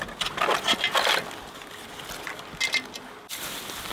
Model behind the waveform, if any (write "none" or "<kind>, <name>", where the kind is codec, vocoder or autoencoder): none